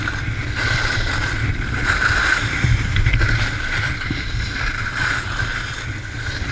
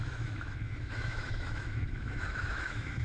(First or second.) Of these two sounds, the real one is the first